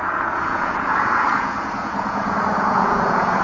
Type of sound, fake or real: fake